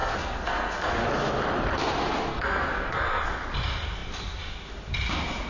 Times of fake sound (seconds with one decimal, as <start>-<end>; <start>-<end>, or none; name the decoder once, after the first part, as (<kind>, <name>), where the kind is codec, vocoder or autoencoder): 0.0-0.9 (codec, SNAC); 2.3-3.3